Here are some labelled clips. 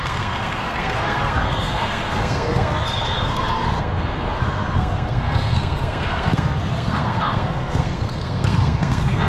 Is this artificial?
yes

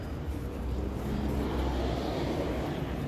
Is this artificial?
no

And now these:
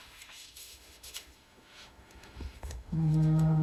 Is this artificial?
yes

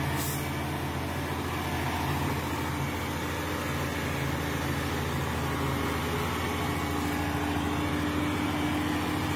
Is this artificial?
no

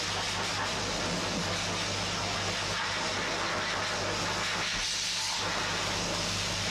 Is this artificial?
no